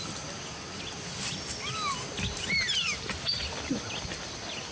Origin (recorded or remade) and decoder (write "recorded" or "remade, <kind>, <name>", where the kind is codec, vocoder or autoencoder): recorded